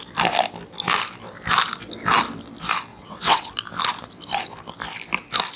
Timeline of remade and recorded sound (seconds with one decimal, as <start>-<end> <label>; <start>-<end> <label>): 0.0-2.9 recorded; 2.9-3.5 remade; 3.5-5.6 recorded